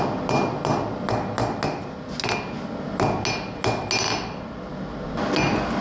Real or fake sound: real